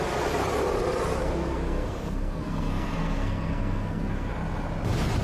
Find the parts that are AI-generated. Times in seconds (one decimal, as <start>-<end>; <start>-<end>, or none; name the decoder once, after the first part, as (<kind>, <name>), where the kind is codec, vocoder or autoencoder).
1.2-4.3 (codec, SNAC)